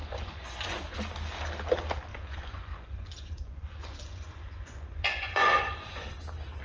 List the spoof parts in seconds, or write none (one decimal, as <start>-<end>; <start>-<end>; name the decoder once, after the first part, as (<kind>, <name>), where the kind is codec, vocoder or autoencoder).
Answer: 0.0-0.8 (vocoder, Vocos); 2.1-6.1